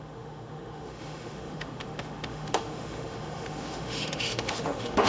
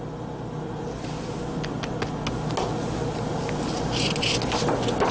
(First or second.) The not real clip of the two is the first